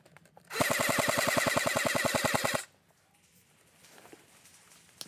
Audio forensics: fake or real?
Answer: real